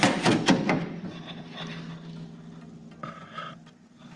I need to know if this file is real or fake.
real